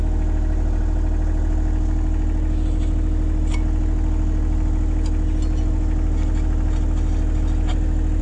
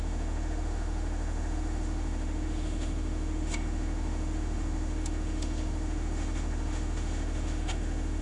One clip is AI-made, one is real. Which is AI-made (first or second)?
second